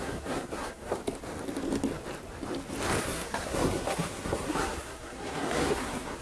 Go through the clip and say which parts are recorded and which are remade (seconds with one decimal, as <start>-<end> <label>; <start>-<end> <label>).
0.0-1.0 remade; 1.0-3.0 recorded; 3.0-6.2 remade